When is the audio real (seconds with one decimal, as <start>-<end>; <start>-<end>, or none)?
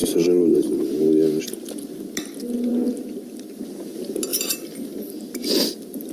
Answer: 1.4-4.3; 5.0-6.1